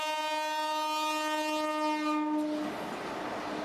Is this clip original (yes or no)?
yes